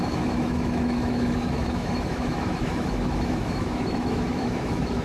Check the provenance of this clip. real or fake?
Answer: fake